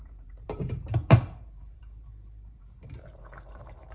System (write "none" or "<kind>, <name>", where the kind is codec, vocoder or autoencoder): vocoder, BigVGAN v2